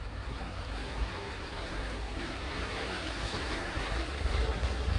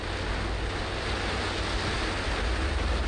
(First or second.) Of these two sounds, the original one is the second